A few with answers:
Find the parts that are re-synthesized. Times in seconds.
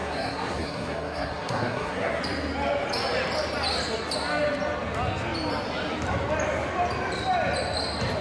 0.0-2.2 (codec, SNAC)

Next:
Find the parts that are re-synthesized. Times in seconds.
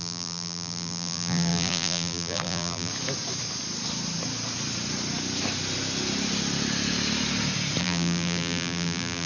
0.0-2.9 (vocoder, BigVGAN v2); 7.8-9.3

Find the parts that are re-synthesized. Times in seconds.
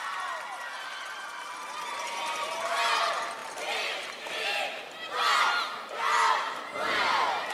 none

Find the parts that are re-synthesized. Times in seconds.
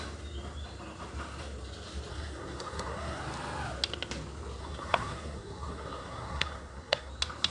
2.1-3.2 (codec, SNAC); 4.6-7.1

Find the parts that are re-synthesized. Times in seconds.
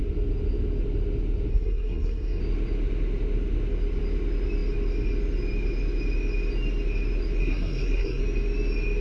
1.5-2.4 (codec, SNAC); 7.4-8.2